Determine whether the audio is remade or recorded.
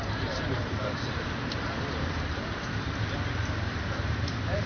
remade